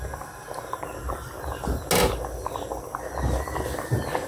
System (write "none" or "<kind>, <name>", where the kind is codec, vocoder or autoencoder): none